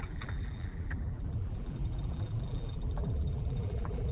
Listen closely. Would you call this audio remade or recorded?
remade